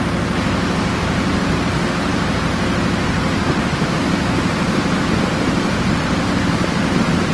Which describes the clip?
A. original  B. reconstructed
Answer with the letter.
A